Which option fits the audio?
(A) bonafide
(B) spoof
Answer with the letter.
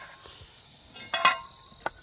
A